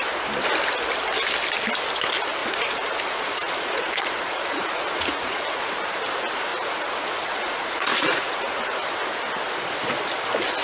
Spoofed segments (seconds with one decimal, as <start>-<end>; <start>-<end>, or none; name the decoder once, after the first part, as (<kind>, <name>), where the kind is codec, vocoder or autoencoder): 2.4-5.7 (vocoder, Vocos); 6.5-8.9